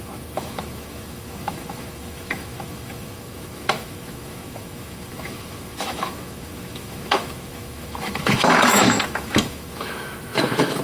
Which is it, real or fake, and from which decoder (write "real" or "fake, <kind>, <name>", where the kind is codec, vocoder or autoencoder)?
fake, autoencoder, DAC-VAE